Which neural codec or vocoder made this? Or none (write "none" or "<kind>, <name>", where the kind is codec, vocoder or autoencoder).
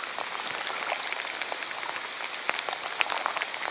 none